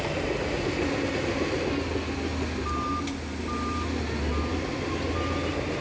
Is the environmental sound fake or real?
real